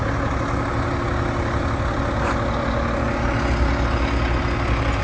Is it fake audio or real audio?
real